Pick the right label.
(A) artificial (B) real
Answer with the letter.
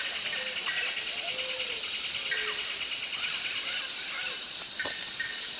B